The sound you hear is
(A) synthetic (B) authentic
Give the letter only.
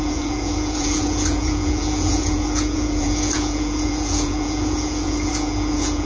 A